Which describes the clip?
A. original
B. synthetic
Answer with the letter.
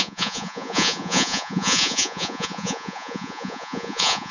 B